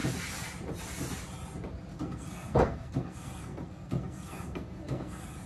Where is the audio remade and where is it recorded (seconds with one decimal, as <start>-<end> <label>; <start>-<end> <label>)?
0.0-1.9 recorded; 1.9-5.5 remade